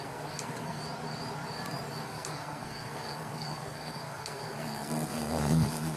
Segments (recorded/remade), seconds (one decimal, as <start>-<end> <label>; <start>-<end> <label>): 0.0-0.8 remade; 0.8-2.0 recorded; 2.0-6.0 remade